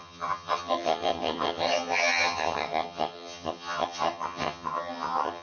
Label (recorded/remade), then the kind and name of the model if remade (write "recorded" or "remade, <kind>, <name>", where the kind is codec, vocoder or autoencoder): remade, vocoder, HiFi-GAN